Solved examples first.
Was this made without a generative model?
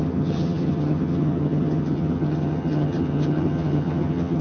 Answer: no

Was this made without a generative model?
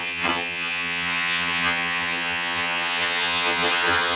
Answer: no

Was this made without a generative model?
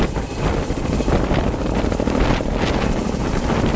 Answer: yes